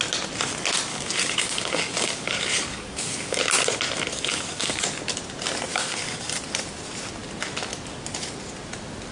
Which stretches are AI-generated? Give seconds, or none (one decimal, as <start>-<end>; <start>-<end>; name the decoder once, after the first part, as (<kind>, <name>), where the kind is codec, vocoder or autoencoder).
0.9-3.4 (codec, DAC); 4.1-4.8; 5.7-6.3